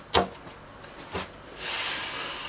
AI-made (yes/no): no